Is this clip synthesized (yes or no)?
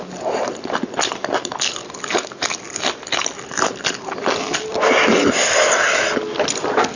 no